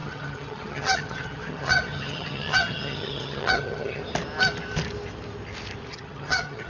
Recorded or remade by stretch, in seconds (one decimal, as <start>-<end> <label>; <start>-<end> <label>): 0.0-4.0 remade; 4.0-5.9 recorded; 5.9-6.7 remade